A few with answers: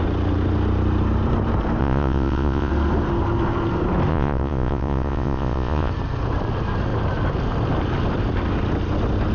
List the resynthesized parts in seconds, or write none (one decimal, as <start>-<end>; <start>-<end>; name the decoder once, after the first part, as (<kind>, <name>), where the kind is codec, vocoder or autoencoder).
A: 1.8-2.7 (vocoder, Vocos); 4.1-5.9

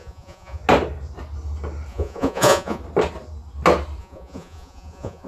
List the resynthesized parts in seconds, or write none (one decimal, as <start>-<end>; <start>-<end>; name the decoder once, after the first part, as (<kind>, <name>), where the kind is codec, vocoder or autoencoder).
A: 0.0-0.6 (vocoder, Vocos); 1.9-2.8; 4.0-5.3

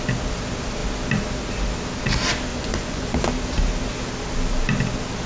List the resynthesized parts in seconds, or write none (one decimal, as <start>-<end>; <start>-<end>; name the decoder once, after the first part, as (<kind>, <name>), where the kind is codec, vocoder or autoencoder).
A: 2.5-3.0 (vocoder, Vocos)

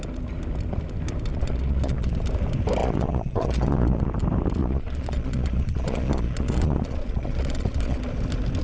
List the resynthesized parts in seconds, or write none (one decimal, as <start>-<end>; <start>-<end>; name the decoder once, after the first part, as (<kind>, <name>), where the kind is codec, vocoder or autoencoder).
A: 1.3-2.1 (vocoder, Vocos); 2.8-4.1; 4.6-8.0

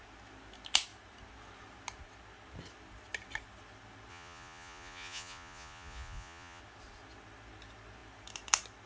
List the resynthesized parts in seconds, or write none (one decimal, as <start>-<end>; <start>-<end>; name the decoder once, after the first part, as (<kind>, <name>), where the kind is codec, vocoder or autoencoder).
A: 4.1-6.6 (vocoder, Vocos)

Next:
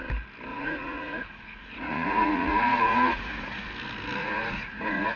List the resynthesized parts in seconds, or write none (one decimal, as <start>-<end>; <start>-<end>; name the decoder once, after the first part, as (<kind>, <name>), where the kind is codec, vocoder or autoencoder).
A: 0.5-3.6 (vocoder, Vocos); 4.2-5.2

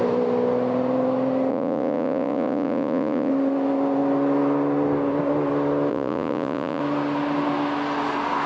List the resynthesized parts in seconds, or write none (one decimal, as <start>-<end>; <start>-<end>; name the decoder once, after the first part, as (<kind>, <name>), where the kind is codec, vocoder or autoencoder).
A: 1.5-3.3 (vocoder, Vocos); 5.9-6.8